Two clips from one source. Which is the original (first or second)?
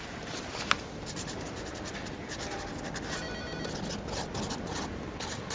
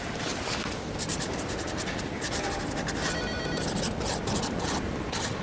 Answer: first